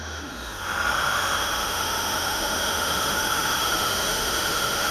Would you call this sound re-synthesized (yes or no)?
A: yes